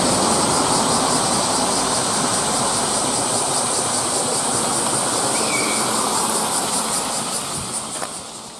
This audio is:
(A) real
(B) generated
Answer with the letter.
A